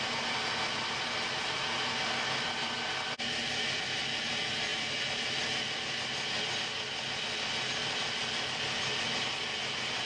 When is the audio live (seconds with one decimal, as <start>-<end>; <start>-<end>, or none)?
0.0-10.1